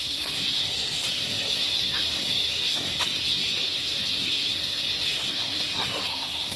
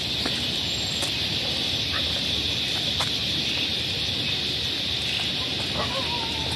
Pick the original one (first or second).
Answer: second